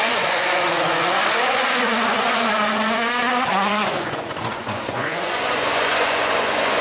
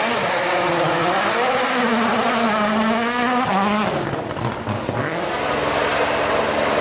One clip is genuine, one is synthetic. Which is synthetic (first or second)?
first